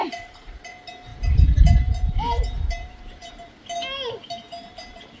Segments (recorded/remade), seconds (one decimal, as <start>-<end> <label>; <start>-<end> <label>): 0.0-0.6 remade; 0.6-1.1 recorded; 1.1-3.3 remade; 3.3-5.2 recorded